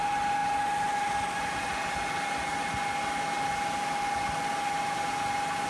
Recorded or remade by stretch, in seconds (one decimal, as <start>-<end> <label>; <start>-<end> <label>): 0.0-5.7 recorded